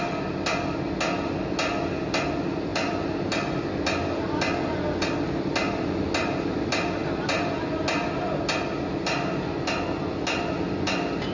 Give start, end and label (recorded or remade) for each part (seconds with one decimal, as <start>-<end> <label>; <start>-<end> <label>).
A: 0.0-11.3 recorded